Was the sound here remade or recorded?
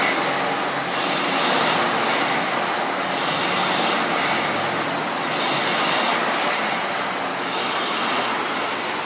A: recorded